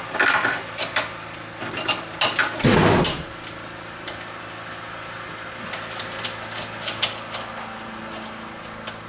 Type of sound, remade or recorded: recorded